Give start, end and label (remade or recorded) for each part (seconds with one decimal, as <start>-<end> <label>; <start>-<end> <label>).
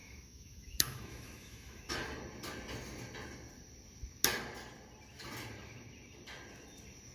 0.0-1.9 remade; 1.9-7.1 recorded